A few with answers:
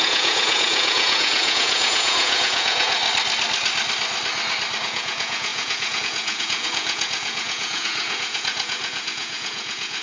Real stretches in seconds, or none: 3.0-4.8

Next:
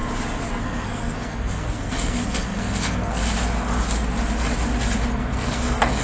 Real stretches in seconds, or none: 0.0-0.6; 3.2-5.1

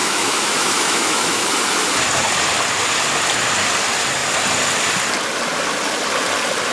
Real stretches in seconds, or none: 1.5-6.7